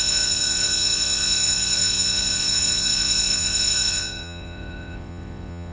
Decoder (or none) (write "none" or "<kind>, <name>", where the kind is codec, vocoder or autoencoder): vocoder, Vocos